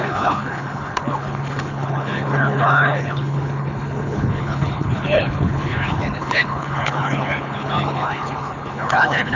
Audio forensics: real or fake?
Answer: fake